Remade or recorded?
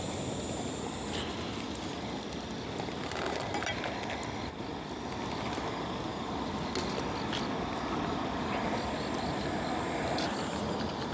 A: recorded